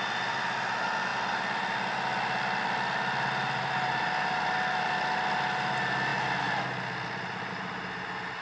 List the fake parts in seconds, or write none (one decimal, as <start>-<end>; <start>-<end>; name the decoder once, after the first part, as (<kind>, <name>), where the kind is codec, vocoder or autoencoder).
none